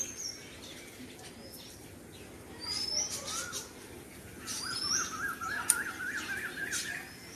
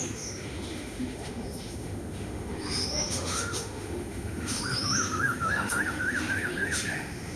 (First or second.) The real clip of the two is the first